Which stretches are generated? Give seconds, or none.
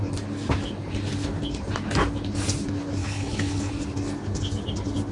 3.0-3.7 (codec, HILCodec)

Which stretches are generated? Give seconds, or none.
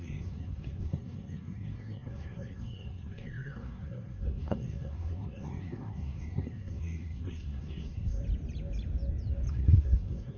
0.0-8.2 (codec, SNAC); 9.5-10.4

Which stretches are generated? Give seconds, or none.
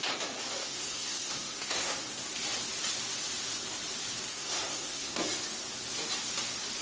0.6-1.9 (codec, SNAC); 4.3-5.2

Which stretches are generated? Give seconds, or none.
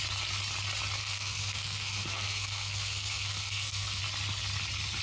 1.0-4.0 (codec, SNAC)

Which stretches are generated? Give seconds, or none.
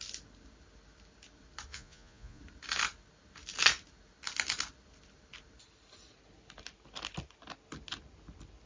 1.7-2.4 (vocoder, Vocos)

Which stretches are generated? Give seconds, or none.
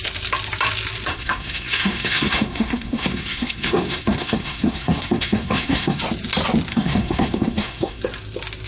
1.1-6.0 (codec, SNAC); 6.7-8.0